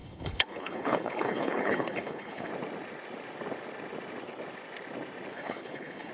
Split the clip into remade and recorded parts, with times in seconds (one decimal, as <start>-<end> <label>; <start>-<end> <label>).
0.0-2.5 remade; 2.5-5.3 recorded; 5.3-6.1 remade